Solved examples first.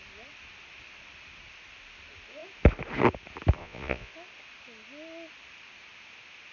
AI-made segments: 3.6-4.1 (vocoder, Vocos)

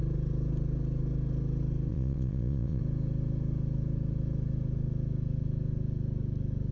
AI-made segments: 1.9-2.8 (vocoder, Vocos)

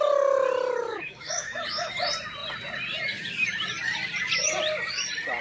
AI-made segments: 0.9-1.9 (autoencoder, DAC-VAE)

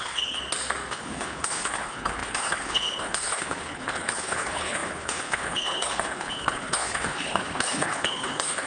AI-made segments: 0.0-0.4 (codec, HILCodec); 0.9-8.7